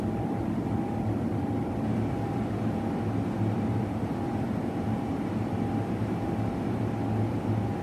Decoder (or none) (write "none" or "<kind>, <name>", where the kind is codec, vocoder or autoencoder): vocoder, BigVGAN v2